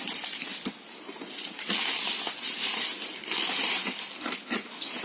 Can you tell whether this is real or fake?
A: real